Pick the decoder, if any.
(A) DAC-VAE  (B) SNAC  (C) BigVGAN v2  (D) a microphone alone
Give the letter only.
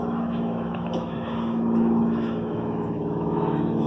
A